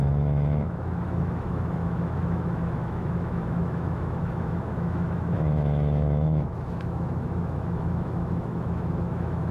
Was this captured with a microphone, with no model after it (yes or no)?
no